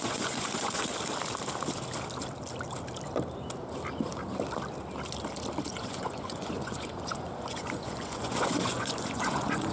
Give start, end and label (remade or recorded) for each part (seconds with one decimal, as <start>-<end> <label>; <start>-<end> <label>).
0.0-0.9 remade; 0.9-5.7 recorded; 5.7-9.7 remade